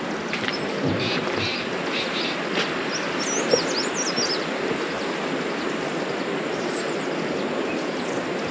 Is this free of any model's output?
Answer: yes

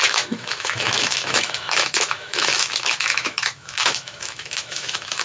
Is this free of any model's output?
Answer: no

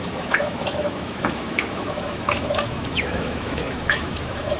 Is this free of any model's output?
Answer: no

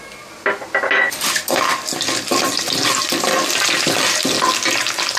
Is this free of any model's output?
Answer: yes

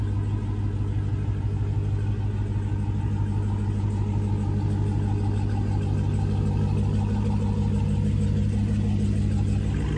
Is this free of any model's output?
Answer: yes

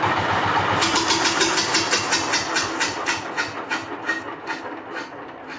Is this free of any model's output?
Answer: yes